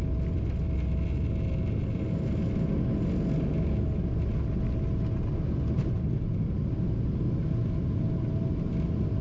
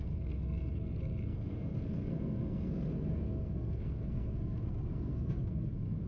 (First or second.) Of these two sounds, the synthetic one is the second